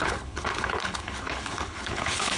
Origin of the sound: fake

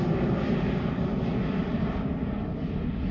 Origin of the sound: real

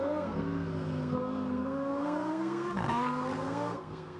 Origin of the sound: fake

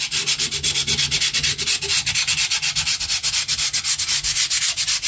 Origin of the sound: real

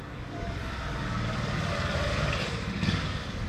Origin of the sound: fake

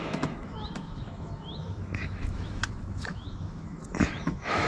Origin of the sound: fake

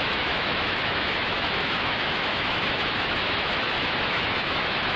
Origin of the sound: fake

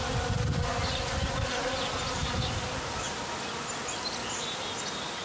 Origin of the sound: real